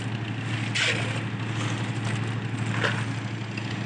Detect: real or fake real